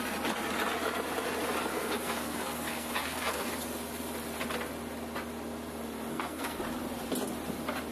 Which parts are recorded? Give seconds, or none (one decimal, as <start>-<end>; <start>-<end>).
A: 0.0-1.7; 3.5-6.1; 6.6-7.9